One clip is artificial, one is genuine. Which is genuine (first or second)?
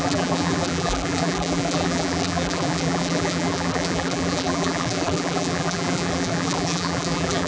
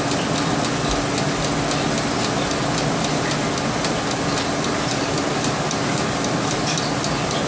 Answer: second